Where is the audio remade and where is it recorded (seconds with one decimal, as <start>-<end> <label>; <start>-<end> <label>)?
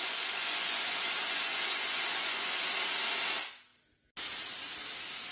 0.0-2.5 remade; 2.5-5.3 recorded